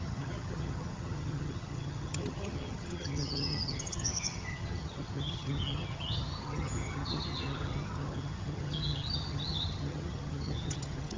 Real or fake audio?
fake